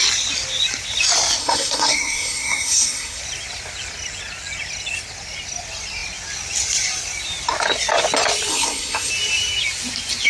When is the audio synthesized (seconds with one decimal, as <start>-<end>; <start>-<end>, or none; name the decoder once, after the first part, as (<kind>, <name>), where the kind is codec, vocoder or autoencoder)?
1.4-3.2 (codec, SNAC); 8.5-9.1